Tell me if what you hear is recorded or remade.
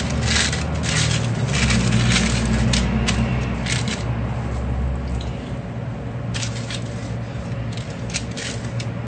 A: recorded